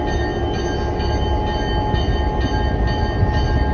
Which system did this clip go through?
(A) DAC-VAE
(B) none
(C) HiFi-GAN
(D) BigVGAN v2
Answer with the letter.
B